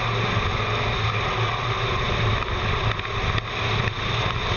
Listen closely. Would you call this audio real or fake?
real